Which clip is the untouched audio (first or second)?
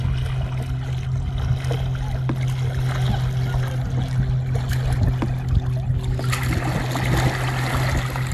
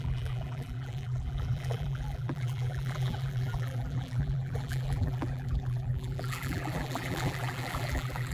first